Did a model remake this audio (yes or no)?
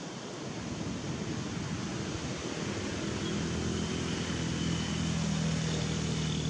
no